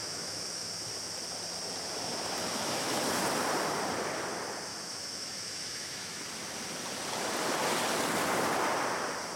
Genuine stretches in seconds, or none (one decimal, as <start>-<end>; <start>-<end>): 0.7-2.4; 3.0-4.7; 6.2-9.4